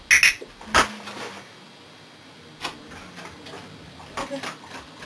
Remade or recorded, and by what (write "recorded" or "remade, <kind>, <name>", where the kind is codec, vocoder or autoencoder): recorded